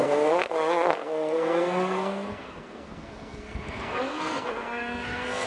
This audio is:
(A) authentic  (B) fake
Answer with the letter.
B